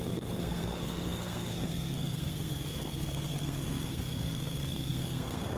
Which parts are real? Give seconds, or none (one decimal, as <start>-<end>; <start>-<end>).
none